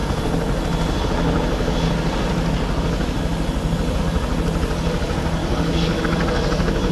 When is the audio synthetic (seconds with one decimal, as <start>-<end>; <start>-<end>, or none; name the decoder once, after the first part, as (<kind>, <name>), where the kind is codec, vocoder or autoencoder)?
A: 5.4-6.0 (codec, DAC)